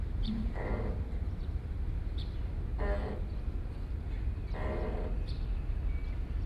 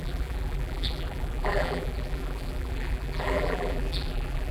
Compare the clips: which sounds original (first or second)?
first